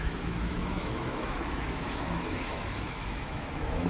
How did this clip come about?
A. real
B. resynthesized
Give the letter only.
B